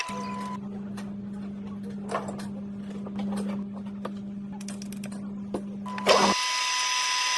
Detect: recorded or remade recorded